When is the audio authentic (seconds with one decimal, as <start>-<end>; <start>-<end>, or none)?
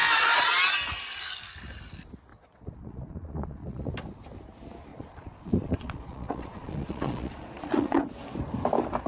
0.0-2.3; 3.9-4.9; 8.1-9.1